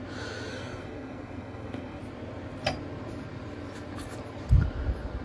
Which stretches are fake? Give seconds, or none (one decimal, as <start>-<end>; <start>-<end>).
0.5-2.0

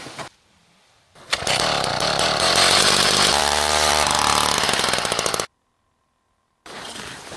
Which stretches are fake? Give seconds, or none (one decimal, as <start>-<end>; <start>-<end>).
1.9-2.5; 3.4-3.9